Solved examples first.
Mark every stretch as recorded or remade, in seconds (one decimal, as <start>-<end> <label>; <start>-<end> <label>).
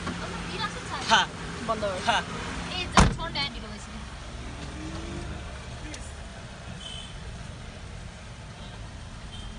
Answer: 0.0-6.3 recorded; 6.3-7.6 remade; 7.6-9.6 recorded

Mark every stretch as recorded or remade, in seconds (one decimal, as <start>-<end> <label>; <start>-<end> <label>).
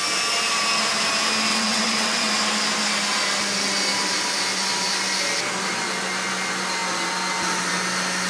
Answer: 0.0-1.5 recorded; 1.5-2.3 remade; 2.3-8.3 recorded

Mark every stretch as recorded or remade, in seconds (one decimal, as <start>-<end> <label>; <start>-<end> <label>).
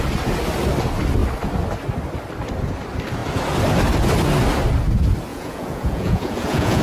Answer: 0.0-5.3 recorded; 5.3-6.8 remade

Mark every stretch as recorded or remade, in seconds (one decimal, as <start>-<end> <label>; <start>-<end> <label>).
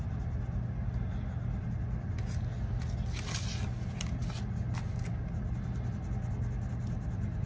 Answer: 0.0-7.5 recorded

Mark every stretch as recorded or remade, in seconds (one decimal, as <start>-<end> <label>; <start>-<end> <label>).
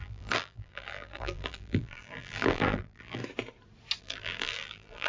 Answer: 0.0-3.2 remade; 3.2-4.0 recorded; 4.0-5.1 remade